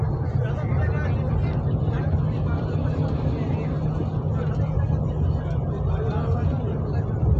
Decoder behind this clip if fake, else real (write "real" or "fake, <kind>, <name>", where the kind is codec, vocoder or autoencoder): real